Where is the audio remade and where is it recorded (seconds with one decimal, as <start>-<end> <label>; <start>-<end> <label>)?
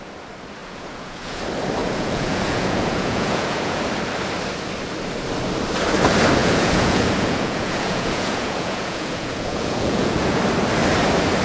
0.0-0.6 recorded; 0.6-1.4 remade; 1.4-1.8 recorded; 1.8-3.8 remade; 3.8-6.4 recorded; 6.4-10.4 remade; 10.4-11.4 recorded